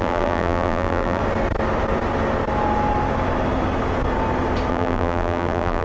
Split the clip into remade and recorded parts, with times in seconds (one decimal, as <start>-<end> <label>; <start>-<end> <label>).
0.0-1.2 remade; 1.2-4.7 recorded; 4.7-5.8 remade

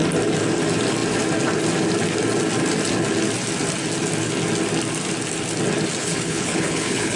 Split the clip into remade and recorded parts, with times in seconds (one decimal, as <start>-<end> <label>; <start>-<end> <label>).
0.0-6.0 recorded; 6.0-7.2 remade

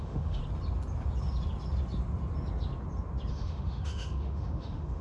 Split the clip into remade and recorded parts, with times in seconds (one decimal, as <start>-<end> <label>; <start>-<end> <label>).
0.0-0.4 remade; 0.4-3.3 recorded; 3.3-5.0 remade

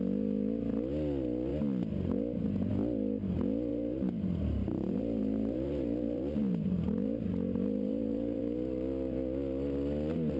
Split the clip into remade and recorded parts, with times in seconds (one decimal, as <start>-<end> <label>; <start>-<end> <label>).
0.0-3.7 recorded; 3.7-8.4 remade; 8.4-10.4 recorded

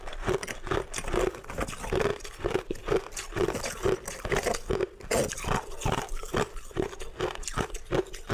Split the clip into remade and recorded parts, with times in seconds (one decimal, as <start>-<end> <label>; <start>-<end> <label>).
0.0-8.3 recorded

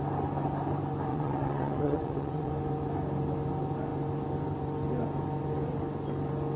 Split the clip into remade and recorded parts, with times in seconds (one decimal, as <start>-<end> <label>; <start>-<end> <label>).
0.0-1.1 recorded; 1.1-2.5 remade; 2.5-6.6 recorded